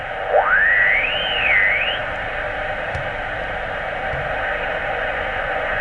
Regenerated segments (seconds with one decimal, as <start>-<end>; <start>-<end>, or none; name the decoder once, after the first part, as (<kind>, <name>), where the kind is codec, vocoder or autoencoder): 4.8-5.8 (vocoder, Vocos)